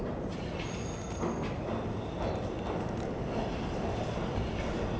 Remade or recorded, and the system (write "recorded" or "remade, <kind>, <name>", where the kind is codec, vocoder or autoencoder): recorded